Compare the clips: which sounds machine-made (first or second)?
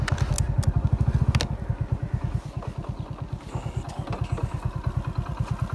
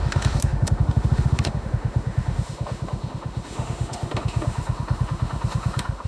second